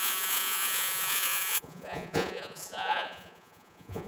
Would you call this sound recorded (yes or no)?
no